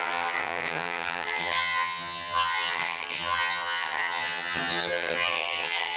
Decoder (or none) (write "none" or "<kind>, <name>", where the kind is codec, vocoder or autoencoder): vocoder, HiFi-GAN